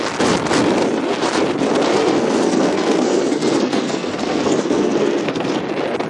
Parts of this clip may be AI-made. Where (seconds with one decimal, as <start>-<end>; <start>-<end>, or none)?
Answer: 1.9-5.6